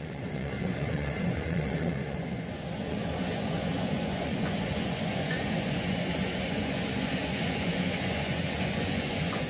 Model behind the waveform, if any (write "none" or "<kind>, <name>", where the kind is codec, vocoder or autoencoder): vocoder, Vocos